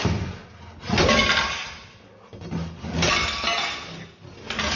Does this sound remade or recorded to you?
recorded